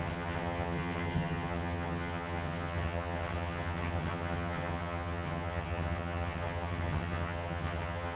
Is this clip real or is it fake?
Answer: fake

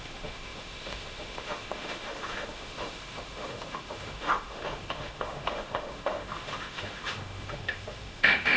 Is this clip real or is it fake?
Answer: fake